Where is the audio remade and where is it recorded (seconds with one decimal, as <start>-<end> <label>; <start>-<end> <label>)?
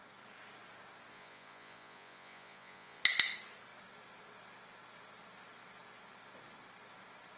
0.0-1.1 recorded; 1.1-3.0 remade; 3.0-7.4 recorded